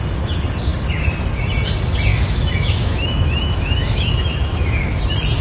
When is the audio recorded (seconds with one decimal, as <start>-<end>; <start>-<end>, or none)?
0.0-2.1; 5.0-5.4